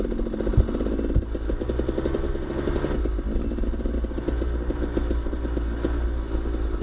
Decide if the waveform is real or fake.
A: real